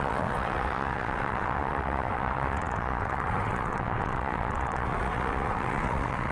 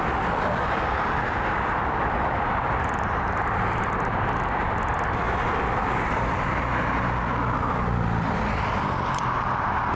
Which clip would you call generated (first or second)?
first